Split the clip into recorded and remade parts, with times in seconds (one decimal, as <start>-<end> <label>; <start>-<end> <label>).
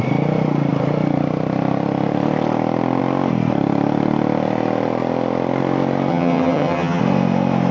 0.0-6.1 recorded; 6.1-7.0 remade; 7.0-7.7 recorded